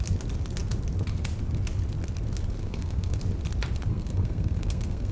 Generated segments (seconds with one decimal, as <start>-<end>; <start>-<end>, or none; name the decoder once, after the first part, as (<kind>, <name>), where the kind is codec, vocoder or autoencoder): 2.6-3.2 (codec, SNAC); 3.9-5.1